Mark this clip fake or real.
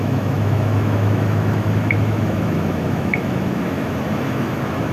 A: fake